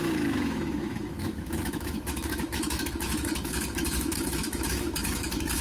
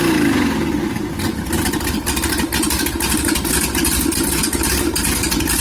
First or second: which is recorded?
second